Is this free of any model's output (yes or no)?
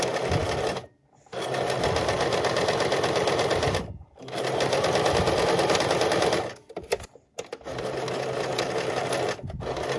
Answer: yes